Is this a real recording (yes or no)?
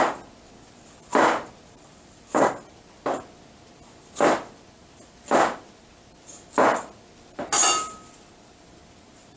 yes